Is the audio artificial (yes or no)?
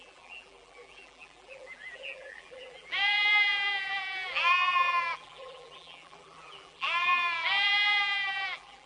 yes